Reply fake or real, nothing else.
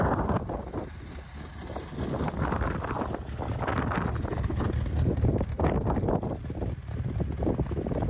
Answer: real